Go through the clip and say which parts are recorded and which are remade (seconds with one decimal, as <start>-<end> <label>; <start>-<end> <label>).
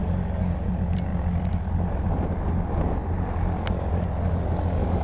0.0-5.0 recorded